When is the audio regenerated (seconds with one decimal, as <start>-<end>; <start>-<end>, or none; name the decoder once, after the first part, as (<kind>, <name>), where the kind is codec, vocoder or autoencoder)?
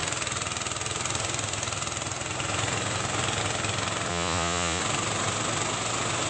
4.1-4.8 (vocoder, Vocos)